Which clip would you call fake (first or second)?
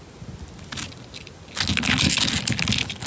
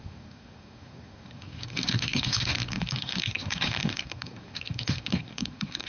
second